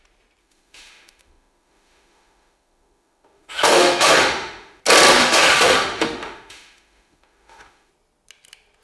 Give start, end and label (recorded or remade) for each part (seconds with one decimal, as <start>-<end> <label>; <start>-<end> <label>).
0.0-0.4 recorded; 0.4-4.8 remade; 4.8-5.2 recorded; 5.2-7.9 remade; 7.9-8.8 recorded